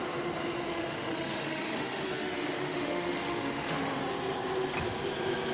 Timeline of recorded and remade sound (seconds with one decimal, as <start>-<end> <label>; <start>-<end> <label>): 0.0-0.7 recorded; 0.7-4.0 remade; 4.0-5.5 recorded